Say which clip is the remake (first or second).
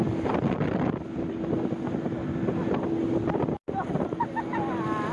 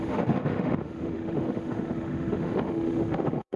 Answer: second